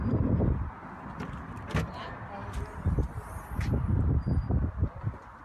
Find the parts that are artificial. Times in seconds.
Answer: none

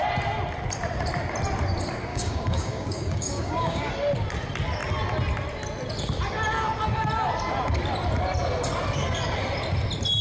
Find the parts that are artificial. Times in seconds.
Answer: 2.1-3.9 (codec, DAC)

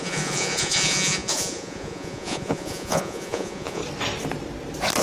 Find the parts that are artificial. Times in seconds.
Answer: 0.0-3.8 (vocoder, Vocos)

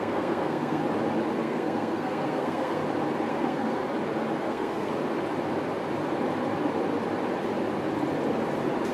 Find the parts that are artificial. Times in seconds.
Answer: 0.0-0.8 (codec, SNAC); 1.4-2.8; 3.3-3.8; 4.4-4.9

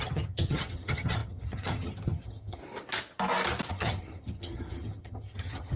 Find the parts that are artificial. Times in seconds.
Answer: 0.0-2.6 (vocoder, HiFi-GAN); 3.7-5.8

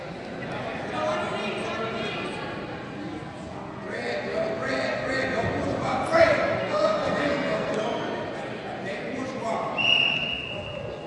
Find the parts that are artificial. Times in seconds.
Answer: 6.6-7.7 (codec, SNAC)

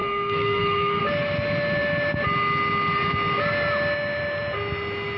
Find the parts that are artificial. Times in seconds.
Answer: 0.0-1.0 (codec, SNAC)